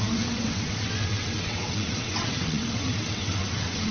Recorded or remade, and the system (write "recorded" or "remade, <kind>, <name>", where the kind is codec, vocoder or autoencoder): remade, vocoder, WaveNeXt